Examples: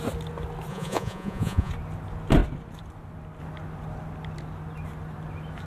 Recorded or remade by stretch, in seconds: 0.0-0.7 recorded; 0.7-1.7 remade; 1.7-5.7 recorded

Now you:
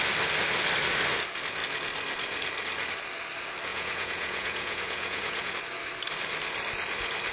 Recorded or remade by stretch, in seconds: 0.0-3.7 recorded; 3.7-5.5 remade; 5.5-7.3 recorded

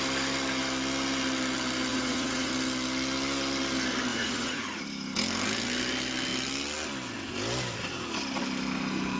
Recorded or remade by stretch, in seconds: 0.0-1.9 recorded; 1.9-2.5 remade; 2.5-4.1 recorded; 4.1-4.8 remade; 4.8-9.2 recorded

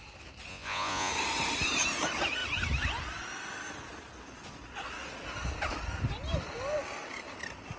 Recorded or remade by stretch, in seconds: 0.0-0.5 recorded; 0.5-1.1 remade; 1.1-7.8 recorded

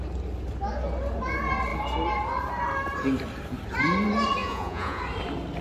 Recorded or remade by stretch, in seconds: 0.0-4.4 recorded; 4.4-5.0 remade; 5.0-5.6 recorded

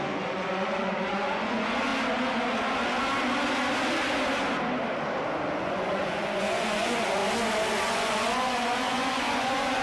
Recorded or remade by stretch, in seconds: 0.0-1.9 remade; 1.9-5.5 recorded; 5.5-7.2 remade; 7.2-7.7 recorded; 7.7-9.8 remade

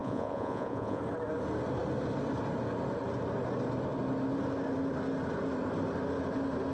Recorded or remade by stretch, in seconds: 0.0-1.0 remade; 1.0-6.7 recorded